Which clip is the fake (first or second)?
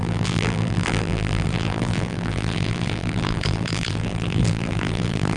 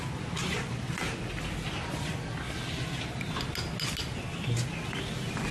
first